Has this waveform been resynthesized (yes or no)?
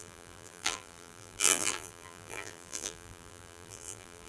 yes